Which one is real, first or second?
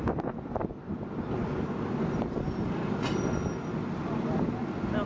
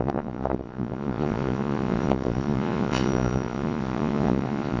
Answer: first